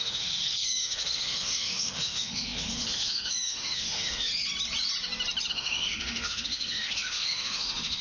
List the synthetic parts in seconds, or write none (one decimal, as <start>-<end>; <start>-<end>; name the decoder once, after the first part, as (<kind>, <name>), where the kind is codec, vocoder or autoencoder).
0.0-4.3 (autoencoder, DAC-VAE); 5.5-8.0